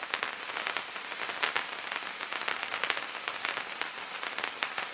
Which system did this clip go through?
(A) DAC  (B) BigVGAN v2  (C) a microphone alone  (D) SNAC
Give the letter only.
B